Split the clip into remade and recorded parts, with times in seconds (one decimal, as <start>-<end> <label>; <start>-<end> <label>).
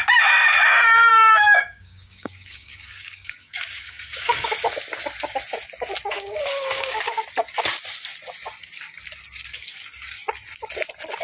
0.0-1.1 recorded; 1.1-4.5 remade; 4.5-6.1 recorded; 6.1-7.0 remade; 7.0-11.2 recorded